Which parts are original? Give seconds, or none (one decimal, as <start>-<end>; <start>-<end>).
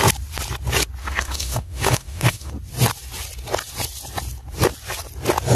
0.0-1.0; 2.5-5.5